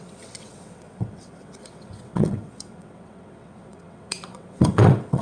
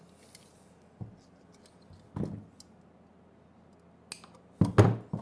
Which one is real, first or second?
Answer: second